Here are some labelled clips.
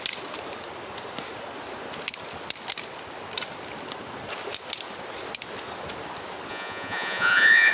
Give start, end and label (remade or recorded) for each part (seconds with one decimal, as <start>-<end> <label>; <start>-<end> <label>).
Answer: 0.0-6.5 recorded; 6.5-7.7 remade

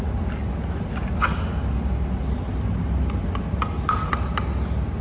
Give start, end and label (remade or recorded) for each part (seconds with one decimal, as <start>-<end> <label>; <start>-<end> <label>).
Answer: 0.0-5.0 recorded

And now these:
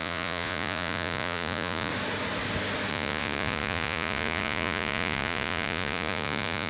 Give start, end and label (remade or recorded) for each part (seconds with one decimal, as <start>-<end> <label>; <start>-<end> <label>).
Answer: 0.0-1.9 remade; 1.9-2.9 recorded; 2.9-6.7 remade